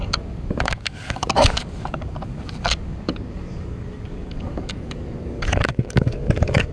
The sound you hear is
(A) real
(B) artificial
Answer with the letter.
B